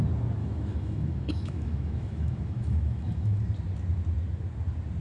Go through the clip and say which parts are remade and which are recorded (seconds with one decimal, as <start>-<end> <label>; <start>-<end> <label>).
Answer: 0.0-0.4 recorded; 0.4-3.4 remade; 3.4-5.0 recorded